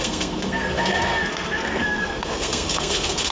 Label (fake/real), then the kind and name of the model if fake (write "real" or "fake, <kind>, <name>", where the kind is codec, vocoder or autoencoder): fake, codec, SNAC